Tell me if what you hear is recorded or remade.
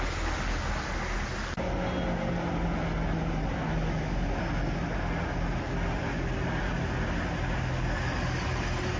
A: recorded